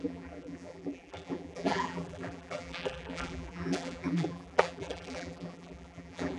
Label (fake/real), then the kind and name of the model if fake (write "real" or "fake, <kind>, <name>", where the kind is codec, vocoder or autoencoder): fake, vocoder, BigVGAN v2